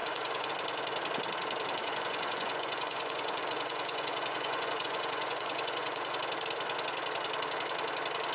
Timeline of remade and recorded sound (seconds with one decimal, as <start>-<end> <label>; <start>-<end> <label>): 0.0-0.5 remade; 0.5-1.8 recorded; 1.8-6.2 remade; 6.2-8.3 recorded